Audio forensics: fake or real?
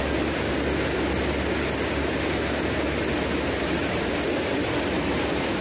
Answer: real